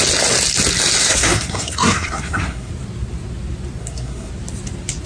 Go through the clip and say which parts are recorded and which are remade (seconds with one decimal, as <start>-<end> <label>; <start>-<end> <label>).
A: 0.0-1.0 recorded; 1.0-2.7 remade; 2.7-3.8 recorded; 3.8-4.3 remade; 4.3-5.1 recorded